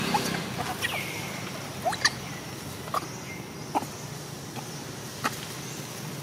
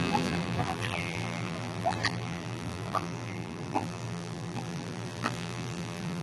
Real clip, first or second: first